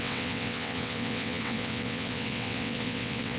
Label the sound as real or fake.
fake